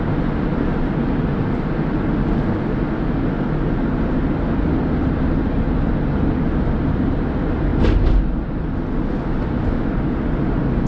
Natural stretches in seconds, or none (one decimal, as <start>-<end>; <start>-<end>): 0.0-0.5; 1.3-10.9